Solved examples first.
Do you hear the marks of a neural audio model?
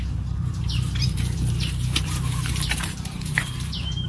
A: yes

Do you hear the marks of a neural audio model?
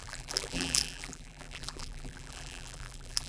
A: yes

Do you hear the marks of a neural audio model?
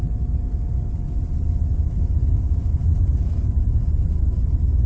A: no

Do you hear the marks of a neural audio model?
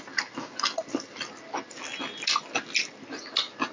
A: no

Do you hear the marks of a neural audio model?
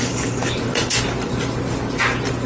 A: no